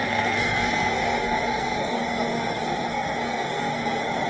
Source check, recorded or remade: remade